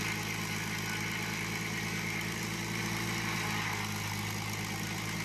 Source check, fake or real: real